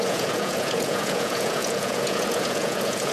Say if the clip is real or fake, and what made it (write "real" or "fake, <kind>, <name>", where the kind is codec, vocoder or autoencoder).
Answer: fake, vocoder, Vocos